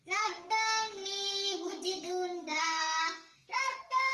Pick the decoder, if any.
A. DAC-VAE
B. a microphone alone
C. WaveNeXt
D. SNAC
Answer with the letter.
D